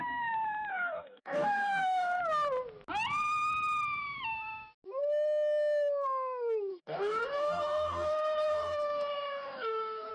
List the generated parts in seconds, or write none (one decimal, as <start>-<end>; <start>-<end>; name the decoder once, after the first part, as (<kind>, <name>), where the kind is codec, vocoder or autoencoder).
0.7-2.2 (codec, DAC); 6.7-10.1